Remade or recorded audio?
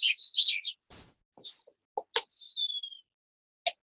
recorded